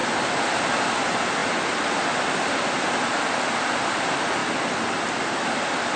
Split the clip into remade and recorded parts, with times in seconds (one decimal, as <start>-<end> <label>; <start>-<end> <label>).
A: 0.0-0.9 remade; 0.9-4.4 recorded; 4.4-6.0 remade